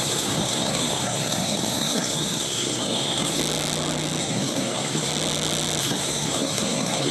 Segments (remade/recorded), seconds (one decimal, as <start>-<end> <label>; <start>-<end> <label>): 0.0-3.4 remade; 3.4-4.2 recorded; 4.2-5.1 remade; 5.1-5.8 recorded; 5.8-7.1 remade